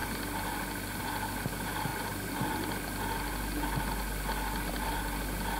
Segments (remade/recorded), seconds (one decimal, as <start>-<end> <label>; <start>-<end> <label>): 0.0-5.6 recorded